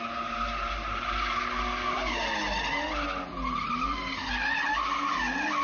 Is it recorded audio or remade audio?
recorded